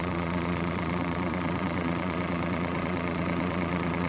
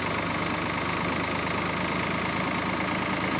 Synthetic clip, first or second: first